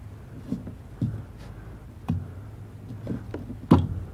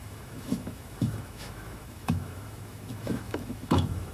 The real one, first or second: first